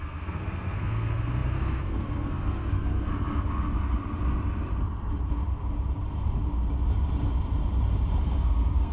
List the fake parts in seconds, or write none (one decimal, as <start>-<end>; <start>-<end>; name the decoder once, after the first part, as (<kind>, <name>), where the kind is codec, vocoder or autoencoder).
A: 0.0-3.1 (codec, SNAC); 8.2-8.9